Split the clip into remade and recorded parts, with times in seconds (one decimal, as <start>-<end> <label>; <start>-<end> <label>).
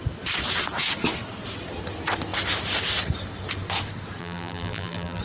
0.0-4.2 recorded; 4.2-5.2 remade